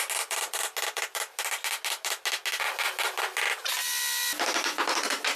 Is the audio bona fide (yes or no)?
yes